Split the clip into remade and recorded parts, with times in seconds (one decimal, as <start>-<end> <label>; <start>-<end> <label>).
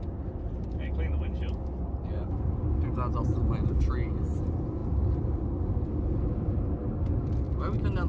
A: 0.0-8.1 recorded